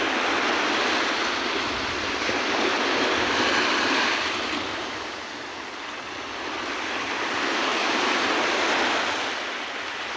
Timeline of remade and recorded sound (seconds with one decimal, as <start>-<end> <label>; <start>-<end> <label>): 0.0-10.2 recorded